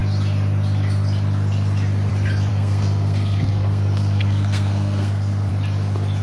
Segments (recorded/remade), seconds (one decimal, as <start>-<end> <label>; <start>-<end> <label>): 0.0-2.5 recorded; 2.5-5.5 remade; 5.5-6.2 recorded